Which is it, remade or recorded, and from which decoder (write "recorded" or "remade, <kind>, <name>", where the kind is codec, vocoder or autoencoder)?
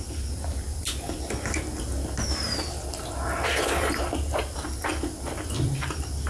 recorded